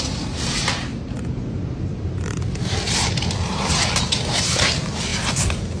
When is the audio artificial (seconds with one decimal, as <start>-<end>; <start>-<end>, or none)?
0.9-4.4